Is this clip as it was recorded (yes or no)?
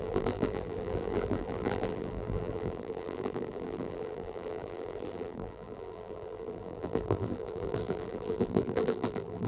no